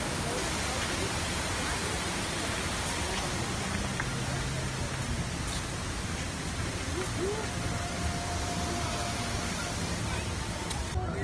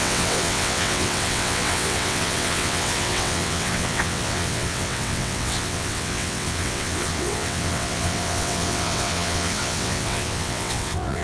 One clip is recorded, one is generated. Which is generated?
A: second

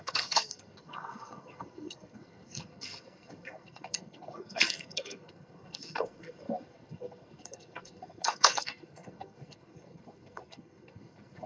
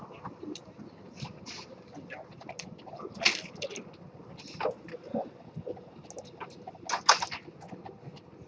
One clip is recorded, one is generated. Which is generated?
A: first